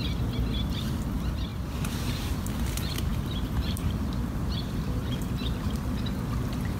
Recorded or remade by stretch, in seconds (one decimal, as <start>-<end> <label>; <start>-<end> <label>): 0.0-3.1 recorded; 3.1-4.0 remade; 4.0-5.0 recorded; 5.0-5.8 remade; 5.8-6.8 recorded